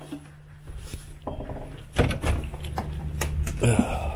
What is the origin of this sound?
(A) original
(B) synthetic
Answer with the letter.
A